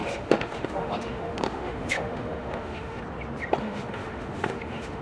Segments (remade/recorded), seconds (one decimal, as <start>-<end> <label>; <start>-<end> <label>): 0.0-3.0 remade; 3.0-3.6 recorded; 3.6-5.0 remade